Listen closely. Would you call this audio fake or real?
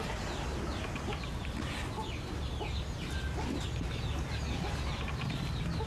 real